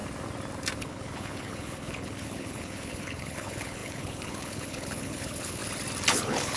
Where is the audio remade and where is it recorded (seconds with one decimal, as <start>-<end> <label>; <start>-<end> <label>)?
0.0-0.8 recorded; 0.8-5.6 remade; 5.6-6.1 recorded; 6.1-6.6 remade